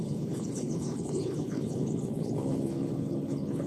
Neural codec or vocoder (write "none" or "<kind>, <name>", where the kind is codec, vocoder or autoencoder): codec, HILCodec